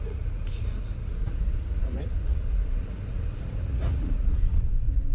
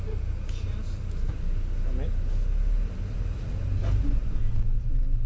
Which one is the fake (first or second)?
first